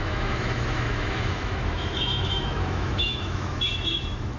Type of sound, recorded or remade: remade